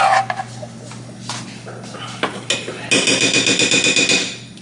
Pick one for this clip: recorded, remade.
recorded